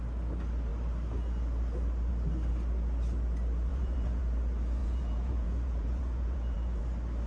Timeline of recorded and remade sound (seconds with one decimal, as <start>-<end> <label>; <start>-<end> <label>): 0.0-3.7 recorded; 3.7-4.2 remade; 4.2-4.8 recorded; 4.8-6.8 remade; 6.8-7.3 recorded